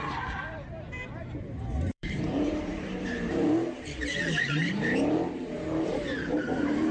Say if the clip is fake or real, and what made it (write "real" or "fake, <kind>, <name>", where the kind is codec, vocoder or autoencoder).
fake, vocoder, BigVGAN v2